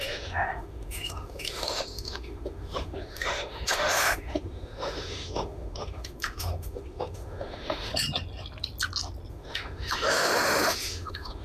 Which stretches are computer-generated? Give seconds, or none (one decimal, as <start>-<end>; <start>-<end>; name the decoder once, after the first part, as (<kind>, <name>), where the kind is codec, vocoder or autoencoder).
0.0-7.9 (autoencoder, DAC-VAE); 9.3-11.4